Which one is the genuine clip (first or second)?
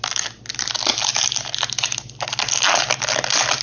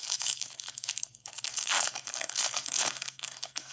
first